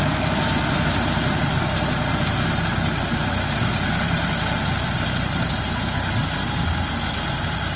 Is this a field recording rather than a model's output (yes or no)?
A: yes